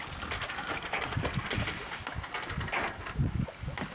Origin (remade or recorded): recorded